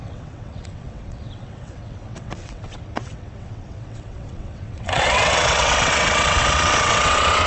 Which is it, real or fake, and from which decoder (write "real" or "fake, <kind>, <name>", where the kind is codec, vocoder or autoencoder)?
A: fake, vocoder, WaveNeXt